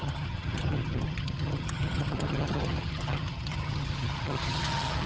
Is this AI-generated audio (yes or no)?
yes